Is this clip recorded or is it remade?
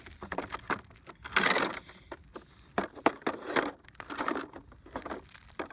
recorded